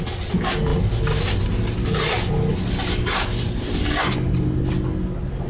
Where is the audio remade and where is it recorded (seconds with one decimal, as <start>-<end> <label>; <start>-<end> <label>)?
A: 0.0-5.5 recorded